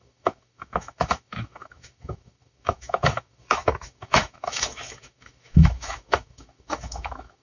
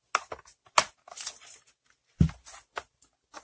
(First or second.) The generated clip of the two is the first